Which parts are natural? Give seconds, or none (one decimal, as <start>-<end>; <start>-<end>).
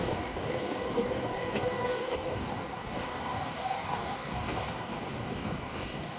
none